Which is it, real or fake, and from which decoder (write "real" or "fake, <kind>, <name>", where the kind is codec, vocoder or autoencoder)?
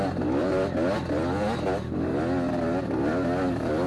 real